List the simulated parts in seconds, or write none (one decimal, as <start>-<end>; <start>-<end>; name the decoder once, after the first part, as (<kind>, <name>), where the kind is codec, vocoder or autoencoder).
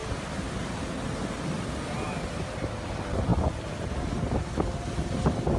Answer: none